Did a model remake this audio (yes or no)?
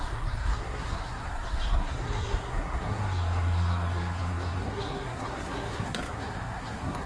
yes